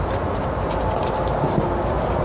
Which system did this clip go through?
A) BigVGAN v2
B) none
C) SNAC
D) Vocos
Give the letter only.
B